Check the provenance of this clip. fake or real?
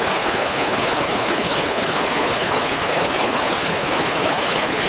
fake